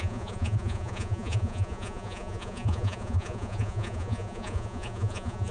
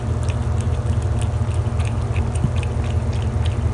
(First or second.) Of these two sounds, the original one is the second